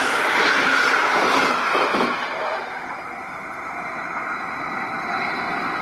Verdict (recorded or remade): recorded